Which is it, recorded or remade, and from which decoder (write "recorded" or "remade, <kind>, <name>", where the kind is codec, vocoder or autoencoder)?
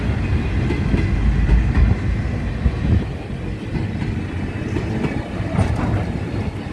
recorded